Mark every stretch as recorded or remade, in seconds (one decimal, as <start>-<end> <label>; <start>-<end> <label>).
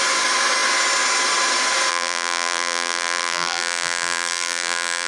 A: 0.0-1.9 recorded; 1.9-5.1 remade